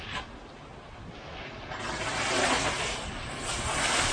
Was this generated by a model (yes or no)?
no